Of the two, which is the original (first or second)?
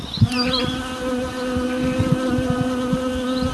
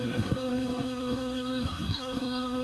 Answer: first